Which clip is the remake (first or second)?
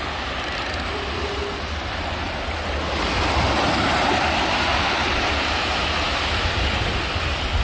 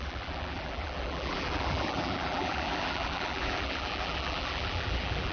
second